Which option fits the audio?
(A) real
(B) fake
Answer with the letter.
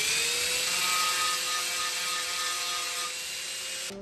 A